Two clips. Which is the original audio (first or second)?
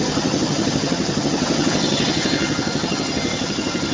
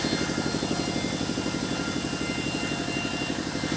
second